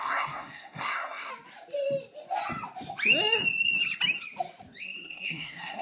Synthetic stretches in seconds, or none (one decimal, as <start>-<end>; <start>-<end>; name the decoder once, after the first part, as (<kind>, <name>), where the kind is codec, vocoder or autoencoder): 0.0-1.3 (codec, SNAC); 4.8-5.8